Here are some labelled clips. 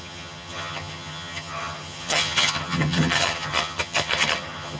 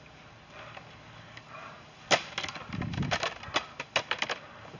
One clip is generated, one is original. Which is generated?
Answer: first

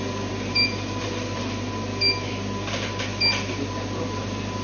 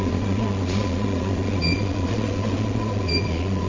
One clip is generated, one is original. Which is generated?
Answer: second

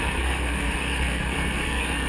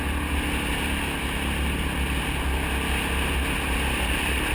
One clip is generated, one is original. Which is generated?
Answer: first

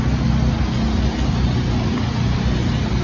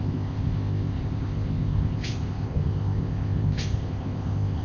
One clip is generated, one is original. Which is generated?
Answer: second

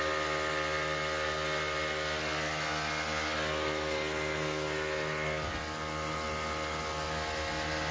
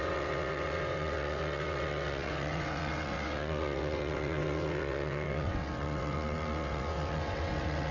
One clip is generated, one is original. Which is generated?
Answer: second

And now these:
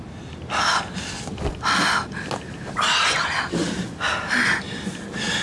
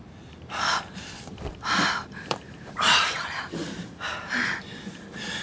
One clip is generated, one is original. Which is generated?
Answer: second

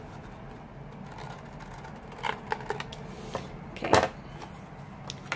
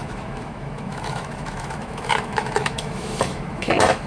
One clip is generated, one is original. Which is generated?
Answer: second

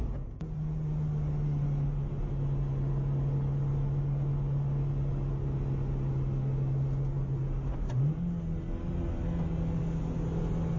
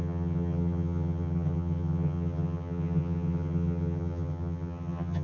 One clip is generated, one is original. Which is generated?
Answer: second